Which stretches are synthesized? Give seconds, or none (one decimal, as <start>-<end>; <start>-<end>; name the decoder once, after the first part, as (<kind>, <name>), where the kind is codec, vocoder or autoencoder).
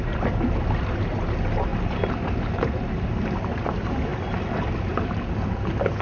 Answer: none